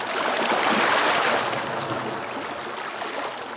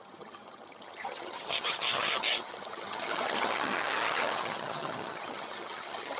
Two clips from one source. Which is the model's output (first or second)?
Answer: second